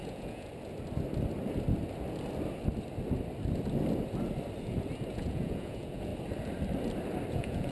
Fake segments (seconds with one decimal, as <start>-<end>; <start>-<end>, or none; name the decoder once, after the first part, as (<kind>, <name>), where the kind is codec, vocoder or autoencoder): 0.0-0.5 (vocoder, Vocos); 5.1-6.1; 7.3-7.7